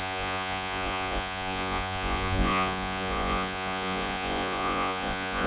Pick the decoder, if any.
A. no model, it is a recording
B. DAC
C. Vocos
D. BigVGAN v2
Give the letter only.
C